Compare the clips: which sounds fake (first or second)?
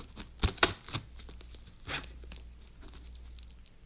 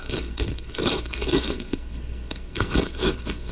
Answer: second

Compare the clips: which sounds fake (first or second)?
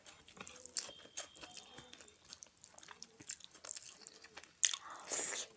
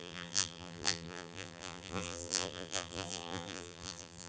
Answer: second